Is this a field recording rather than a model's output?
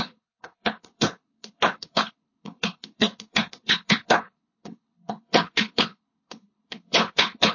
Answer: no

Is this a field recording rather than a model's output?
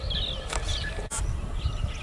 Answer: yes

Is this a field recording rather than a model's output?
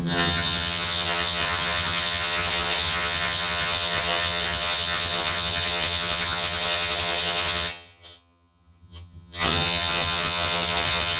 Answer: no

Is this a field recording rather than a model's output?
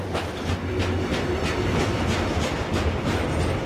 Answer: yes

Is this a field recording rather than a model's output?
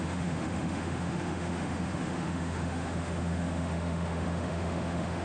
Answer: no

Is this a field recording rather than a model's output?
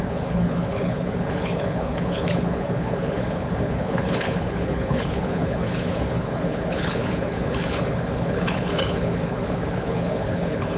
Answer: no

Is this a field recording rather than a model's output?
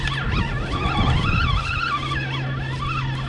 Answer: yes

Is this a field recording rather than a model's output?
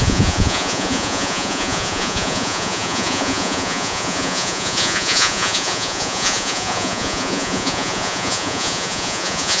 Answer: no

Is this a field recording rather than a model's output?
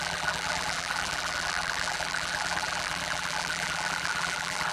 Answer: no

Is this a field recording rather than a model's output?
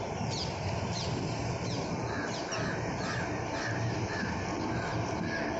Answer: yes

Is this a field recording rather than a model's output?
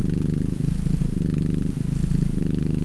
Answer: yes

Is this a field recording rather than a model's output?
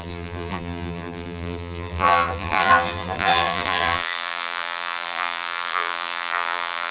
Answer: no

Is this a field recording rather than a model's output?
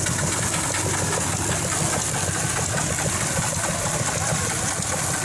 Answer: yes